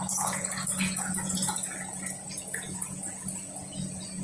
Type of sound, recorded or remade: remade